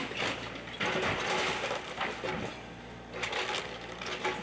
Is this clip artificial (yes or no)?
no